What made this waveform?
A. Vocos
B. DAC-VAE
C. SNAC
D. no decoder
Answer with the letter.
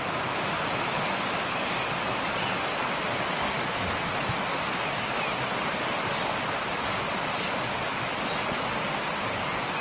D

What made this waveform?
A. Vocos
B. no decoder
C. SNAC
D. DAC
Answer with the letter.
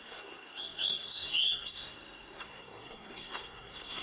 C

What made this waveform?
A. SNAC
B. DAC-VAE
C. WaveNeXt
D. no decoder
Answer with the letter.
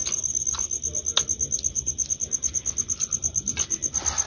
D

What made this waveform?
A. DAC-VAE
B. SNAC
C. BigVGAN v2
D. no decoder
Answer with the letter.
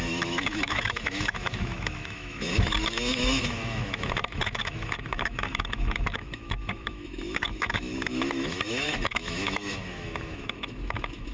A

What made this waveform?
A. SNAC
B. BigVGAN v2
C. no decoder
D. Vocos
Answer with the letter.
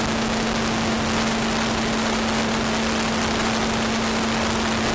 C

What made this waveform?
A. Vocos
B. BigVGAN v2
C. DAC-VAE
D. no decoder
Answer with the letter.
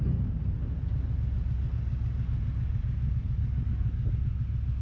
D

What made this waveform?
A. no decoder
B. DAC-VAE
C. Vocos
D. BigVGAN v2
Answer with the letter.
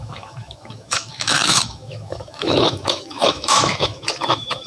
B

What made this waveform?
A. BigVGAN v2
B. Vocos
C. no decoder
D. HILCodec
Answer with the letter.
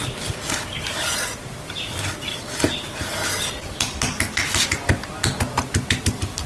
C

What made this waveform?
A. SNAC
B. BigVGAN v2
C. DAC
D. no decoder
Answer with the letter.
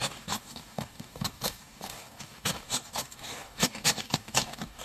C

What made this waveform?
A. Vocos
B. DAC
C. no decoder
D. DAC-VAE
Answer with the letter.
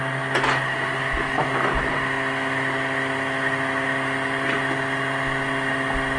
C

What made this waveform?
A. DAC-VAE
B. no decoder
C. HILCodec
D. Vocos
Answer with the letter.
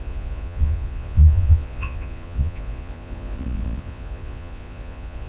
D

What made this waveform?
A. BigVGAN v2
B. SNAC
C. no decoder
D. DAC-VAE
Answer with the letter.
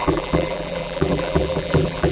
A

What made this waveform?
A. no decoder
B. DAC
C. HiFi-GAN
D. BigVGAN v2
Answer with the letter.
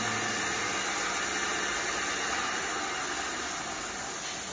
A